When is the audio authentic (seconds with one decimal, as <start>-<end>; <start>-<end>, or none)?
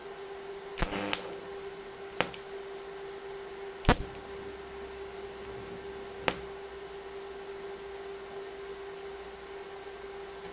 0.0-10.5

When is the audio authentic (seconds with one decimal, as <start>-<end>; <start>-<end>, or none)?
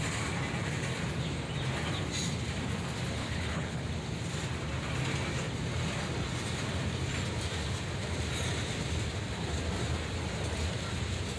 0.0-3.2; 3.8-11.4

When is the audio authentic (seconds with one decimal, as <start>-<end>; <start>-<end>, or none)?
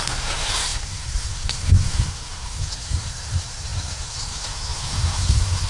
none